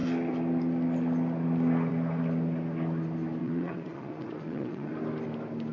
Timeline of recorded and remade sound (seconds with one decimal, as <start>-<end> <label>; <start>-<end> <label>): 0.0-3.4 recorded; 3.4-4.9 remade; 4.9-5.7 recorded